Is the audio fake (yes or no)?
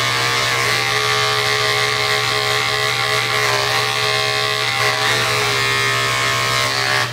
no